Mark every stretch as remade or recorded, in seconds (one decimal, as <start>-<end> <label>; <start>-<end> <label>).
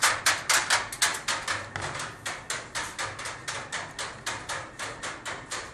0.0-5.7 recorded